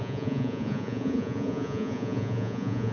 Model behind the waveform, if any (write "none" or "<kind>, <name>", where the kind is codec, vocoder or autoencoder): vocoder, Vocos